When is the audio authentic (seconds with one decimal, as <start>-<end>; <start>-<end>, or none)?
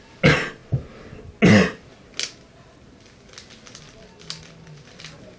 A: 0.0-5.4